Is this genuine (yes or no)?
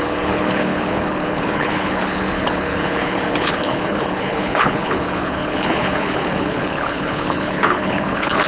no